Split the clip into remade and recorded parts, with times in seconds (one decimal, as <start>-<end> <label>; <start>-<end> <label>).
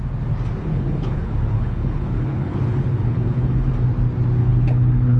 0.0-0.6 recorded; 0.6-3.7 remade; 3.7-4.4 recorded; 4.4-5.2 remade